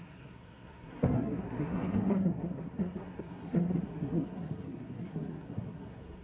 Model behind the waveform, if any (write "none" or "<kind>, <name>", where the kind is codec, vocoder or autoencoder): codec, SNAC